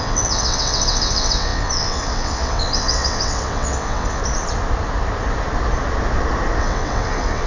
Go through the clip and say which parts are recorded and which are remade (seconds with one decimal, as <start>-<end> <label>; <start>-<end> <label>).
0.0-4.2 remade; 4.2-6.6 recorded; 6.6-7.5 remade